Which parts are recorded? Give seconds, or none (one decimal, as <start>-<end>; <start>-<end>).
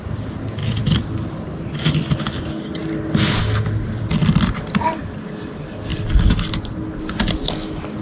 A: 0.0-0.6; 1.6-2.8; 4.4-8.0